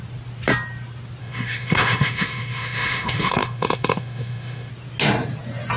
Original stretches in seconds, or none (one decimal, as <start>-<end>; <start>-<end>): 0.0-1.2; 4.7-5.8